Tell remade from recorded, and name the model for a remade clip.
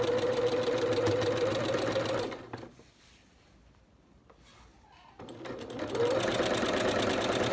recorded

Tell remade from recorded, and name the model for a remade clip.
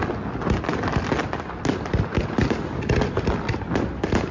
recorded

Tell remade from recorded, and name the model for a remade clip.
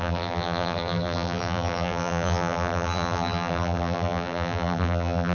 remade, vocoder, BigVGAN v2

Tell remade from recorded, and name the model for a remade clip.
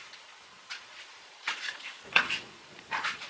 remade, vocoder, Vocos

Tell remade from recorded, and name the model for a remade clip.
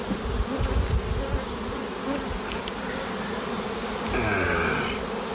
recorded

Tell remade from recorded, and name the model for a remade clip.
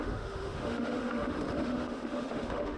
remade, autoencoder, DAC-VAE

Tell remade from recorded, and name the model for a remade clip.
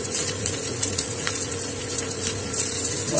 remade, vocoder, Vocos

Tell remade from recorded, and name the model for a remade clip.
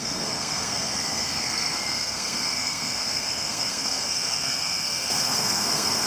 remade, codec, SNAC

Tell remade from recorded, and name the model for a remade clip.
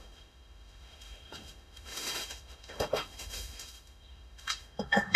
remade, autoencoder, DAC-VAE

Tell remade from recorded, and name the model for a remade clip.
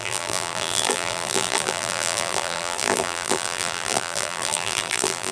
remade, vocoder, BigVGAN v2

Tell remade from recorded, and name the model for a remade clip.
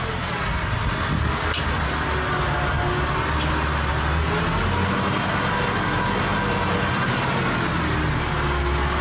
recorded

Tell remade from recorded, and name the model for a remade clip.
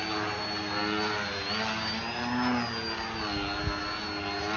recorded